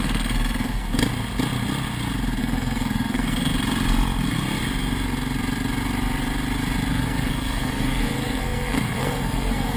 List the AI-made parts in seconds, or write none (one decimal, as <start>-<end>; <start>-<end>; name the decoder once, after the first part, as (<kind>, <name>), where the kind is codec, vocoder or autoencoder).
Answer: 0.0-1.0 (codec, SNAC); 2.4-3.5; 6.9-9.8